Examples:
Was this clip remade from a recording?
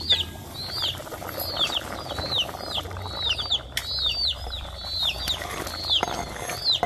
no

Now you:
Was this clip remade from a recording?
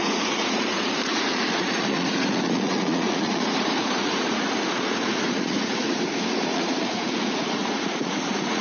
yes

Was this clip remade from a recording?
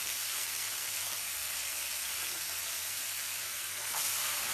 yes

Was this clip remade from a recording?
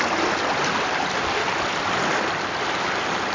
no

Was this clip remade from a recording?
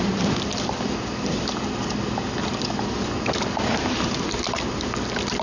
no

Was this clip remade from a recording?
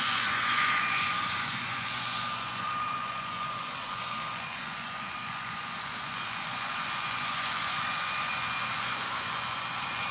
yes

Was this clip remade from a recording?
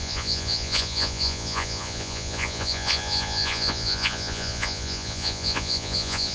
yes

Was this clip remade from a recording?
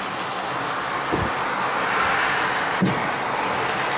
no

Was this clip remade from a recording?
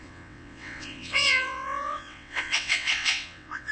yes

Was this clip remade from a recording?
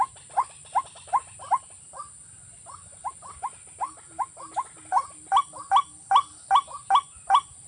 no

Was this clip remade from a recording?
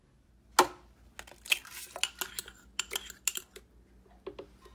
no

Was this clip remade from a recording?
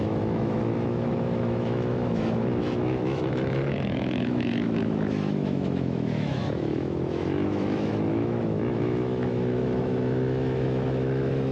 yes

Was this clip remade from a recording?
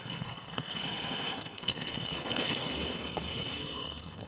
yes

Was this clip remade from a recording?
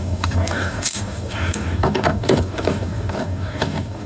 yes